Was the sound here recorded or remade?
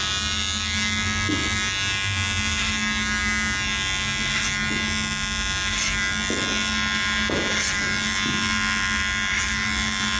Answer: recorded